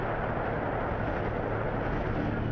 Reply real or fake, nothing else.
real